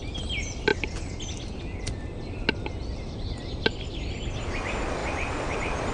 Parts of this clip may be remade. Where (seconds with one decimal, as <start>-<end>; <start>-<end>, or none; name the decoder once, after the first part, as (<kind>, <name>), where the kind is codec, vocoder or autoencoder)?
none